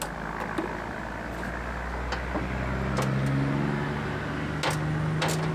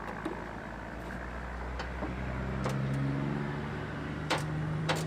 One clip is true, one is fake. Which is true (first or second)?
first